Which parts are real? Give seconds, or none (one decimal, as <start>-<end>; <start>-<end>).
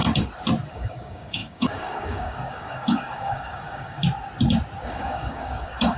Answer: 0.0-0.7; 4.0-4.8